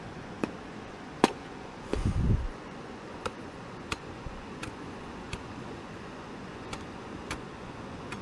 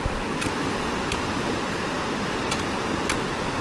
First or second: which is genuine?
second